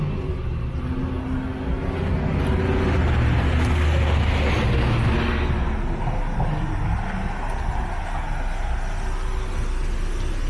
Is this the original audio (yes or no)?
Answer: yes